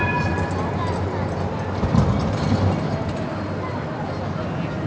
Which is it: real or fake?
real